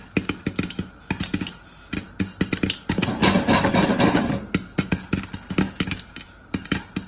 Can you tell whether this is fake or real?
real